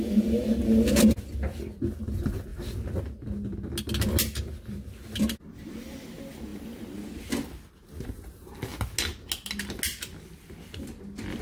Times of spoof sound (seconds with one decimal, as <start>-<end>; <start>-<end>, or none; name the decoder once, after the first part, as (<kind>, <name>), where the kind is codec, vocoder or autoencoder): none